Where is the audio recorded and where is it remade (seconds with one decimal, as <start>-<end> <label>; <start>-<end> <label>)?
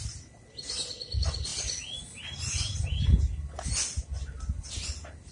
0.0-5.3 recorded